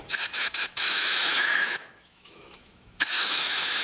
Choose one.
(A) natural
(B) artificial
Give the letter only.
B